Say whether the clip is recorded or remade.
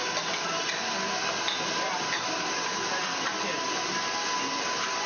recorded